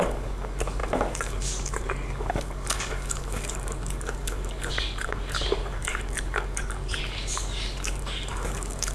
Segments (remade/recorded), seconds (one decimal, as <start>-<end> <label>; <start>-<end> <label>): 0.0-8.9 remade